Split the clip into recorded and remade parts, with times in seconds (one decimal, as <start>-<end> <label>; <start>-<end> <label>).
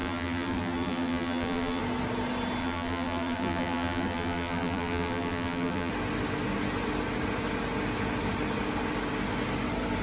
0.0-1.8 remade; 1.8-2.6 recorded; 2.6-5.9 remade; 5.9-10.0 recorded